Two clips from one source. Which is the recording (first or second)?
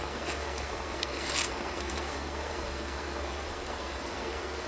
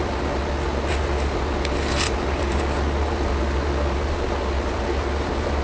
second